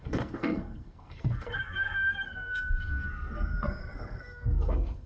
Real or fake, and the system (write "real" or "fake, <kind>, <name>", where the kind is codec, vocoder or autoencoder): fake, codec, SNAC